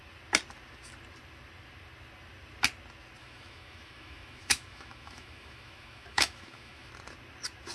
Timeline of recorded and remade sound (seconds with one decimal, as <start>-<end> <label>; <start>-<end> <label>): 0.0-3.2 recorded; 3.2-6.9 remade; 6.9-7.7 recorded